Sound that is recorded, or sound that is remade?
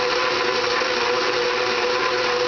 recorded